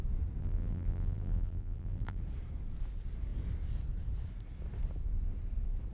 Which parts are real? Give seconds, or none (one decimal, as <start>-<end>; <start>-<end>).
0.0-0.4; 2.2-5.9